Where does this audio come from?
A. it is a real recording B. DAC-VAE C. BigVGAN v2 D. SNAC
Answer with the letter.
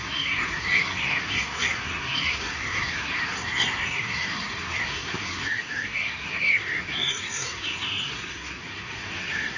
D